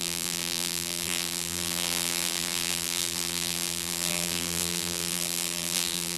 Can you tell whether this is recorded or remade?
remade